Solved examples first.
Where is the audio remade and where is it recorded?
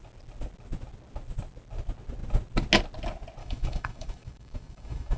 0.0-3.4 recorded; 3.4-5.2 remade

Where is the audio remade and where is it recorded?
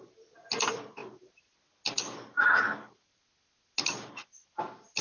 0.0-5.0 recorded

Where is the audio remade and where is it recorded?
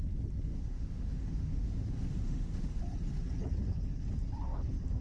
0.0-0.5 recorded; 0.5-2.8 remade; 2.8-5.0 recorded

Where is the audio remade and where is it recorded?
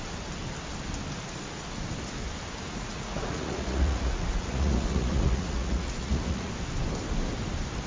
0.0-2.7 recorded; 2.7-6.5 remade; 6.5-7.9 recorded